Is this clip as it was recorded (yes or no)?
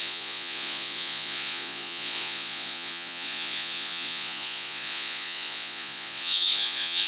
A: no